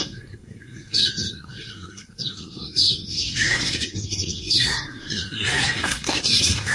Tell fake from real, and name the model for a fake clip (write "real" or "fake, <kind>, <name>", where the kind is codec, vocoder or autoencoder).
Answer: fake, codec, SNAC